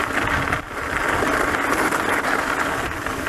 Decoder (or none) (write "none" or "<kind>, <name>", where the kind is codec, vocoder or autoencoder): none